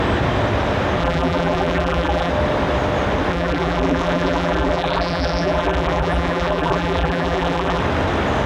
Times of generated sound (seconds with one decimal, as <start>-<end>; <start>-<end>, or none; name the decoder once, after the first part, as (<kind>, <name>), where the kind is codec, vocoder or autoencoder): 1.0-2.3 (vocoder, BigVGAN v2); 3.3-7.8